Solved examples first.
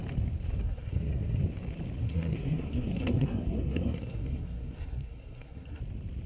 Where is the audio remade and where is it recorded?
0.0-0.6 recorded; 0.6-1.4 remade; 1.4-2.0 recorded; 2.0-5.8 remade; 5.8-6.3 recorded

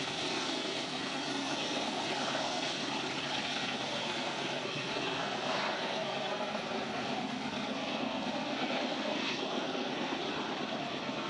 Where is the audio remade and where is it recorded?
0.0-2.8 remade; 2.8-3.4 recorded; 3.4-10.2 remade; 10.2-10.8 recorded; 10.8-11.3 remade

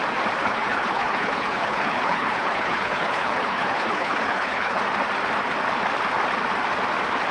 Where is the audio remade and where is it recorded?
0.0-0.4 recorded; 0.4-4.8 remade; 4.8-7.3 recorded

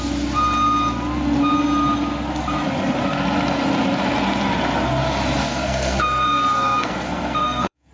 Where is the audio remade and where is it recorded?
0.0-5.4 recorded; 5.4-7.9 remade

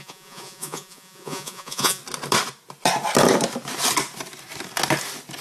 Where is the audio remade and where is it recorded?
0.0-2.0 remade; 2.0-5.4 recorded